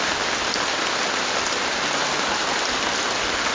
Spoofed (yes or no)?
no